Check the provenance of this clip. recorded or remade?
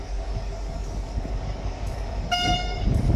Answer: remade